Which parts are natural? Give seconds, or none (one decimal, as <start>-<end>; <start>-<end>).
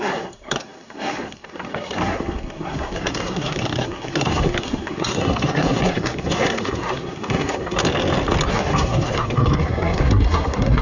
7.8-8.5